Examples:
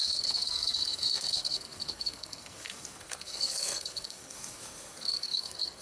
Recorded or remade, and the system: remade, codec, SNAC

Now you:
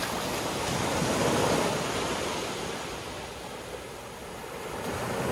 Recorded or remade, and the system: recorded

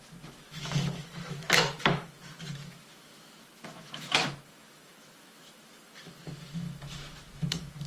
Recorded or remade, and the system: remade, autoencoder, DAC-VAE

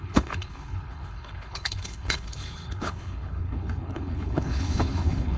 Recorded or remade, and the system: remade, codec, HILCodec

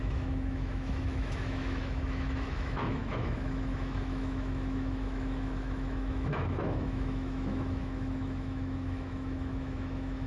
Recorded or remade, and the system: remade, autoencoder, DAC-VAE